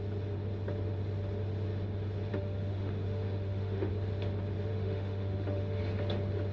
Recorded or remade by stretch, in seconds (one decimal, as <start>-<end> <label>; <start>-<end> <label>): 0.0-2.3 recorded; 2.3-3.9 remade; 3.9-4.7 recorded; 4.7-5.8 remade; 5.8-6.5 recorded